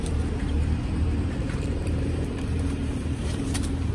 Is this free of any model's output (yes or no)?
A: no